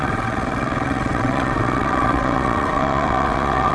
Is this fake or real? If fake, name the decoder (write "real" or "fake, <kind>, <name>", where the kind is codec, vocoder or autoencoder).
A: fake, vocoder, WaveNeXt